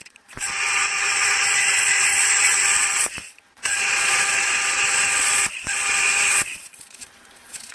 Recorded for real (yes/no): no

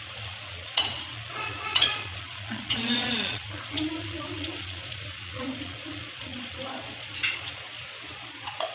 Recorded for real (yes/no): no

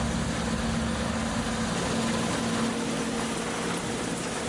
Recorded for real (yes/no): yes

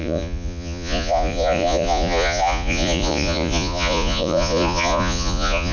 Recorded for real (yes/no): no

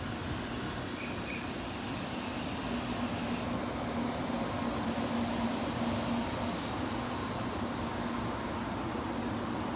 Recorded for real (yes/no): yes